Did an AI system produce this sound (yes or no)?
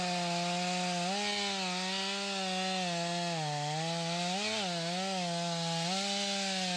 no